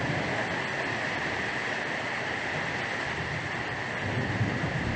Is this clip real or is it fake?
real